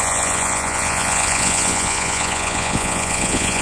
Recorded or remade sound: remade